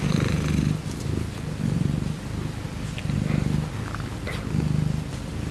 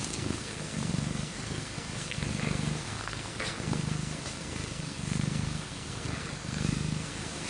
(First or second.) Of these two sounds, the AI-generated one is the second